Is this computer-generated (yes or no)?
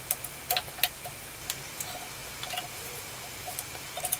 no